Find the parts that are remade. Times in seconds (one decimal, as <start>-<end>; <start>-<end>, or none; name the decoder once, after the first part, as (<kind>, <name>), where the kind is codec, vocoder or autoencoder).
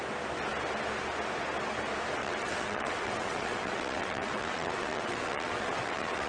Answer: 2.2-6.3 (vocoder, WaveNeXt)